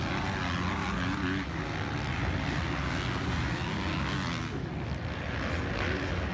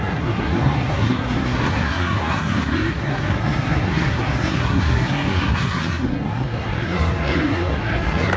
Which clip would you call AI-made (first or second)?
second